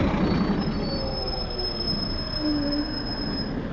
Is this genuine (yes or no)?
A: yes